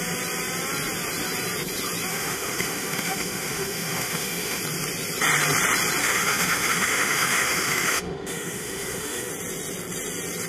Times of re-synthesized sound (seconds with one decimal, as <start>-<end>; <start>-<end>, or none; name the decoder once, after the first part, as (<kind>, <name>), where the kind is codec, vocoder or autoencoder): 2.1-4.6 (autoencoder, DAC-VAE); 6.0-9.3